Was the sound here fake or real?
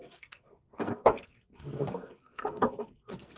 fake